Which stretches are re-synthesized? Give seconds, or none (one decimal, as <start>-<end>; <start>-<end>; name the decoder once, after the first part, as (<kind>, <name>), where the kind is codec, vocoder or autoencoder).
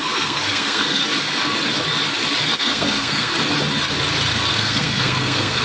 0.0-1.0 (codec, SNAC); 2.4-3.3; 4.5-5.6